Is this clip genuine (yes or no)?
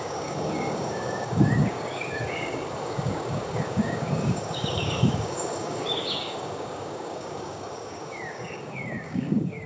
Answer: no